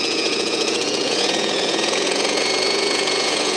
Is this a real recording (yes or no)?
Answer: no